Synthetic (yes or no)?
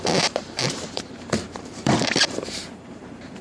yes